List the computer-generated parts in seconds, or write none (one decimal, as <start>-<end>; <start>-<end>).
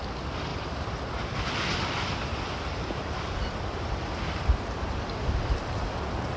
0.0-6.4